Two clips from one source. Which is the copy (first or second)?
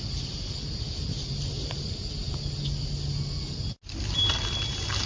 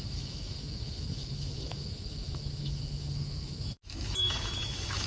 second